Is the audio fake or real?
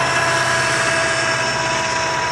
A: real